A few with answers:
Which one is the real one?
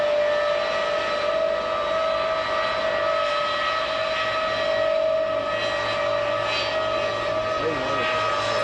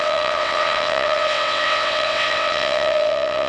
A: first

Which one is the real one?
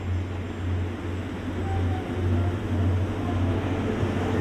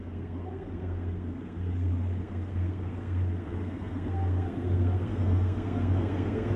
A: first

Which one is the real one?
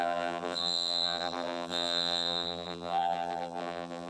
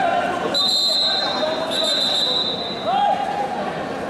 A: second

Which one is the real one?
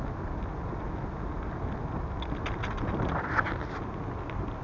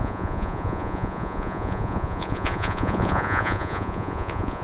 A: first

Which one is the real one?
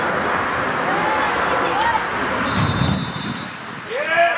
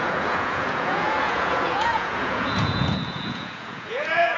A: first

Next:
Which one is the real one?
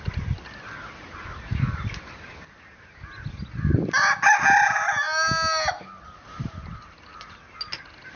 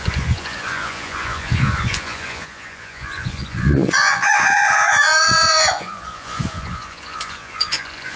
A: first